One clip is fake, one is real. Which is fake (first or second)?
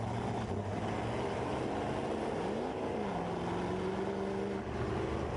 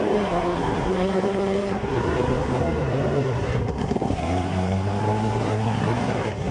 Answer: second